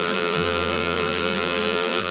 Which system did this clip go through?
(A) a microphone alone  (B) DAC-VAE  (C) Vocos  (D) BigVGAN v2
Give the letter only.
D